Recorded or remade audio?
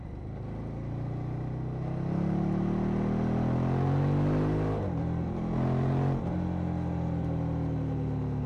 recorded